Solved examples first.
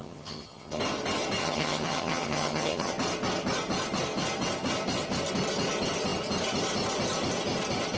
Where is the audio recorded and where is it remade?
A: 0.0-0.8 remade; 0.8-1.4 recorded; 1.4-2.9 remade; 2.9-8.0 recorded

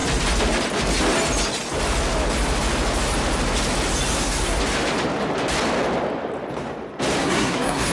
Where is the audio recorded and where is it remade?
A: 0.0-4.1 recorded; 4.1-4.6 remade; 4.6-7.2 recorded; 7.2-7.9 remade

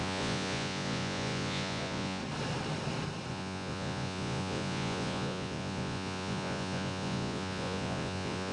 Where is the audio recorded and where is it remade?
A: 0.0-2.2 remade; 2.2-3.3 recorded; 3.3-8.5 remade

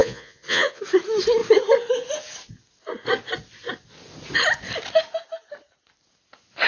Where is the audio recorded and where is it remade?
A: 0.0-0.8 remade; 0.8-6.7 recorded

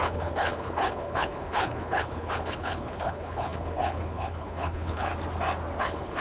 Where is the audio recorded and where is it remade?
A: 0.0-5.1 remade; 5.1-5.8 recorded; 5.8-6.2 remade

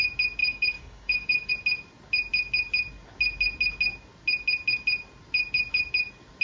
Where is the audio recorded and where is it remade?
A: 0.0-0.4 recorded; 0.4-1.5 remade; 1.5-6.4 recorded

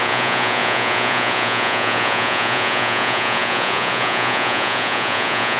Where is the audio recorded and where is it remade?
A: 0.0-5.6 remade